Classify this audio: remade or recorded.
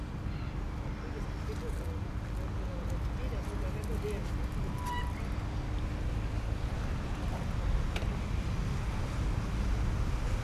recorded